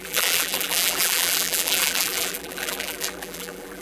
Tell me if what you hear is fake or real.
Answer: fake